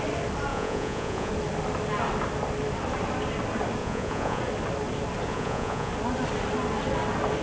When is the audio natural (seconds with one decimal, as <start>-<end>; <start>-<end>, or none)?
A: 0.0-0.5; 1.3-3.8; 4.4-5.3; 5.9-7.4

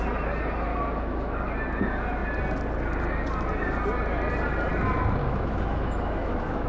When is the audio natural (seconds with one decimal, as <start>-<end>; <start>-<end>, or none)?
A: 0.0-0.7; 1.4-5.2

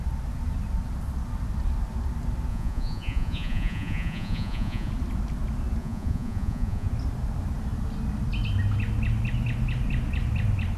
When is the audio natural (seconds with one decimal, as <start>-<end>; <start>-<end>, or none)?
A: 0.0-2.5; 4.9-5.8; 6.9-10.8

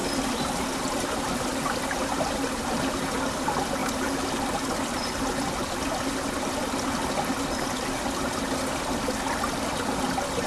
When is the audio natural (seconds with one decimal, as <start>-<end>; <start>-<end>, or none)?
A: 0.0-10.5

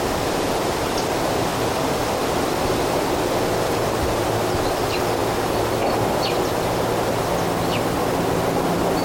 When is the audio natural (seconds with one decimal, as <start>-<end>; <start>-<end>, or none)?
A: 0.0-9.0

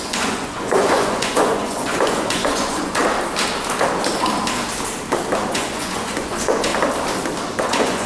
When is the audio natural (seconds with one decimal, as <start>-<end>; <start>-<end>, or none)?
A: 3.0-5.5; 6.7-7.5

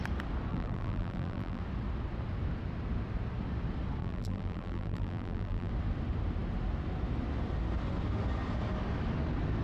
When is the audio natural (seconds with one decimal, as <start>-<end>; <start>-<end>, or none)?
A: 0.0-0.5; 1.6-4.0; 5.7-9.6

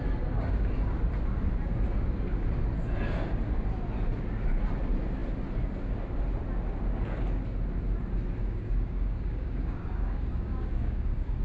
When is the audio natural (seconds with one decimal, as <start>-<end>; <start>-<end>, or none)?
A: 0.0-8.4